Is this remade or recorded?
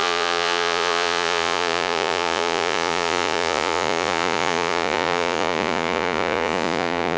remade